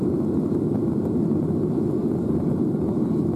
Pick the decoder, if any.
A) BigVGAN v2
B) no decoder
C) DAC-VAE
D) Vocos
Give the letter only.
B